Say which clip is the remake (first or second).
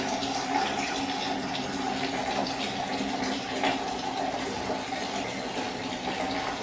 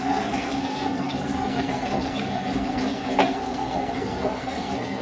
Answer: second